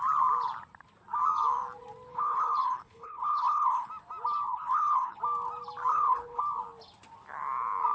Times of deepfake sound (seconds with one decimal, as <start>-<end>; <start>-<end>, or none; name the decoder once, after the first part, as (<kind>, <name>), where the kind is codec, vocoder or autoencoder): 2.1-3.9 (codec, HILCodec); 4.5-5.2; 5.9-6.4